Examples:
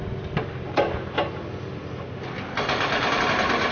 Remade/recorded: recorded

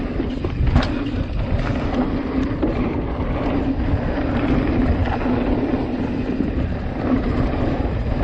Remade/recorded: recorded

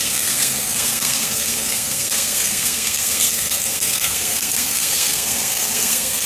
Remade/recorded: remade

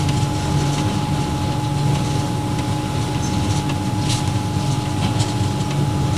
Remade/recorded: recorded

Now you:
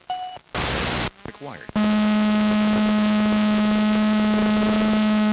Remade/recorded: recorded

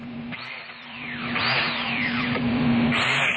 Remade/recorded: remade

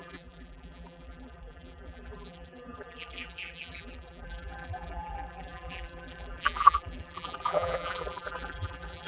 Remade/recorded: remade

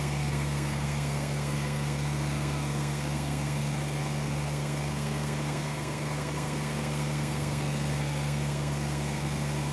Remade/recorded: remade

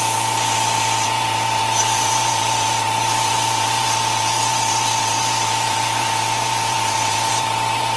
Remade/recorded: remade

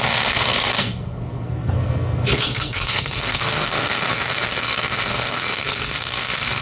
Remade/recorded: remade